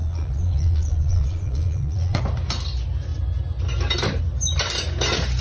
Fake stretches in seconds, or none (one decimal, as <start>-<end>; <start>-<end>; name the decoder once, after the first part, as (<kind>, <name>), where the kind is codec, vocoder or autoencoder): 0.0-2.2 (vocoder, Vocos)